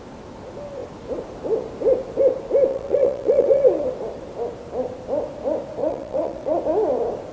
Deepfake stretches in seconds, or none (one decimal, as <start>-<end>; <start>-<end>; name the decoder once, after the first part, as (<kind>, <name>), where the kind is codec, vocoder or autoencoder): 2.7-3.6 (vocoder, WaveNeXt); 5.8-6.6